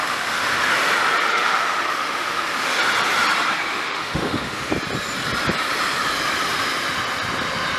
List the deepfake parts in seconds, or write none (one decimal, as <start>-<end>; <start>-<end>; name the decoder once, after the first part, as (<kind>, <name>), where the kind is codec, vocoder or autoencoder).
0.0-0.7 (autoencoder, DAC-VAE); 1.3-2.8; 3.7-4.7